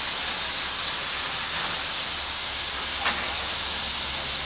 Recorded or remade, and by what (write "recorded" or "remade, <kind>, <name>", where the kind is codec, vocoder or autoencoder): recorded